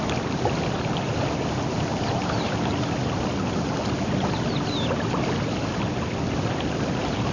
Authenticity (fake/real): real